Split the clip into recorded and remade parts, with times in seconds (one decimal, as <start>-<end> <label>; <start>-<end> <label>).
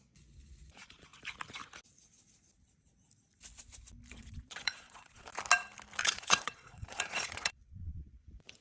0.0-1.1 remade; 1.1-4.1 recorded; 4.1-5.3 remade; 5.3-6.0 recorded; 6.0-8.6 remade